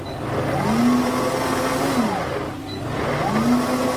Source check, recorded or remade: recorded